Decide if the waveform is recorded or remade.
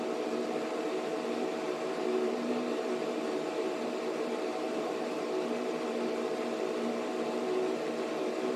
remade